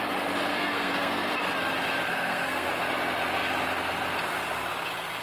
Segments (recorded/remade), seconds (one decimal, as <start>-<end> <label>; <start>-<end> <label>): 0.0-0.5 recorded; 0.5-1.3 remade; 1.3-2.1 recorded; 2.1-2.7 remade; 2.7-5.2 recorded